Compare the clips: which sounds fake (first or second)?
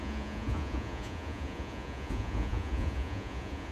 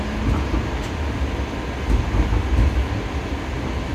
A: first